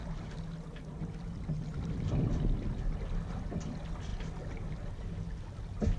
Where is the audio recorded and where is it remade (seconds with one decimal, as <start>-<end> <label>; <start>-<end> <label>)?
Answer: 0.0-6.0 recorded